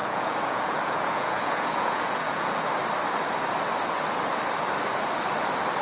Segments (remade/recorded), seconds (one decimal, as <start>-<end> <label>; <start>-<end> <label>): 0.0-2.7 remade; 2.7-5.8 recorded